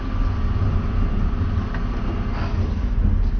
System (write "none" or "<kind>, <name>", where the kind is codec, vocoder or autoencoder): none